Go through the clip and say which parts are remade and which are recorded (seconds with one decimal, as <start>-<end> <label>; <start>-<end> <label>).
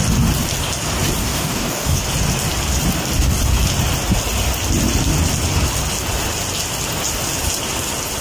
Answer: 0.0-1.2 recorded; 1.2-2.0 remade; 2.0-8.2 recorded